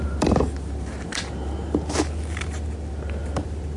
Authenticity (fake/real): real